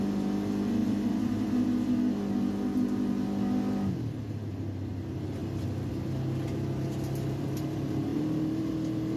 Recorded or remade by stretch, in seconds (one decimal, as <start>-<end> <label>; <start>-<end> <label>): 0.0-0.8 recorded; 0.8-1.5 remade; 1.5-9.2 recorded